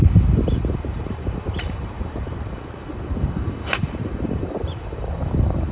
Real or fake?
fake